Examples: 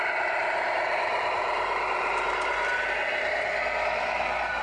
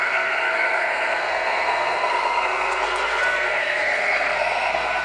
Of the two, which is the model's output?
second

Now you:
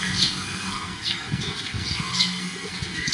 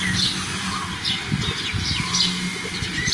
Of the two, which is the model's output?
first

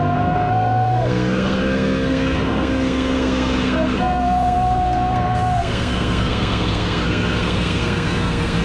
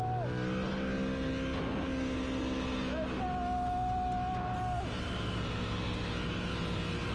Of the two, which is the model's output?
first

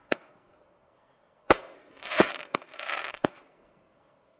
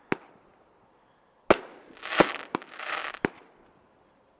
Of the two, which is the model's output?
first